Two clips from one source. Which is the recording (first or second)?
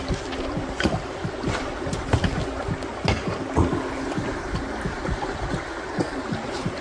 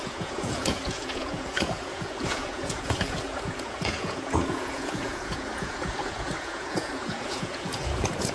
first